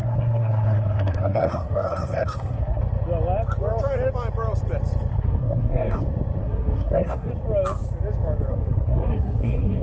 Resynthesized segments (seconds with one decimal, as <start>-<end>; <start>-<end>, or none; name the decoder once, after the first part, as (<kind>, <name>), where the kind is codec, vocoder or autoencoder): 0.0-2.8 (codec, SNAC); 5.1-6.0; 6.4-7.3; 8.5-9.8